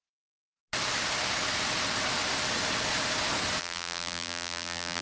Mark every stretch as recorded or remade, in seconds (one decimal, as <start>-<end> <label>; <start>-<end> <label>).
0.0-0.6 remade; 0.6-3.6 recorded; 3.6-5.0 remade